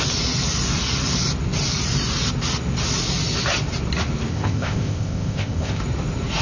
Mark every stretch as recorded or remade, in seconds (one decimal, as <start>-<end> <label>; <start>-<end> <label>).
0.0-4.3 recorded; 4.3-5.8 remade; 5.8-6.4 recorded